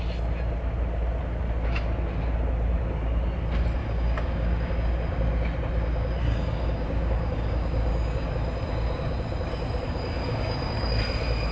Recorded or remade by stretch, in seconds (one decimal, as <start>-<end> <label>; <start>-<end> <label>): 0.0-3.8 recorded; 3.8-4.7 remade; 4.7-6.2 recorded; 6.2-8.3 remade; 8.3-10.2 recorded; 10.2-11.0 remade; 11.0-11.5 recorded